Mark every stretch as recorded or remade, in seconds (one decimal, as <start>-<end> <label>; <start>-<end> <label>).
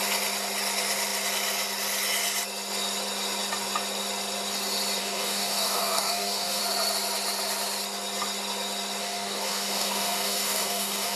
0.0-5.0 recorded; 5.0-6.6 remade; 6.6-9.0 recorded; 9.0-11.2 remade